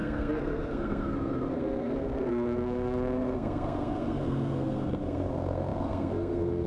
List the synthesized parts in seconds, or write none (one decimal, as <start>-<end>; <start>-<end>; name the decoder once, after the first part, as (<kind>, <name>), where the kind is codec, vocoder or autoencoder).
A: 0.0-6.7 (codec, SNAC)